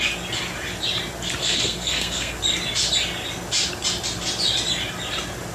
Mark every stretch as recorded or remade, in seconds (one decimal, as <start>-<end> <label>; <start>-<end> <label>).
0.0-1.4 recorded; 1.4-2.4 remade; 2.4-5.5 recorded